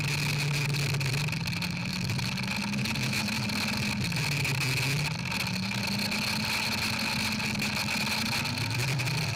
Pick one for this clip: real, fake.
real